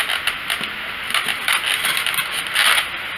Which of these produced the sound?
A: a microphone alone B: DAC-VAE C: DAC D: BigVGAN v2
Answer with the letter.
A